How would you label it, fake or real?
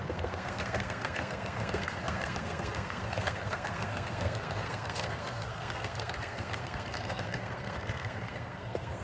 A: fake